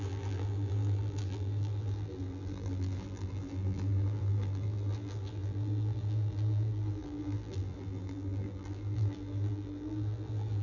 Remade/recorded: remade